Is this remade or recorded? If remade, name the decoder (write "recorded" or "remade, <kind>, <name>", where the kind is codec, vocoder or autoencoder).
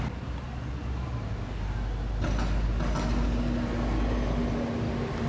recorded